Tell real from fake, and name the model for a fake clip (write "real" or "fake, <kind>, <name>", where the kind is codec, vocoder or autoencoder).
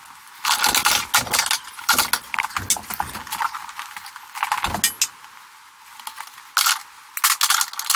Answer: real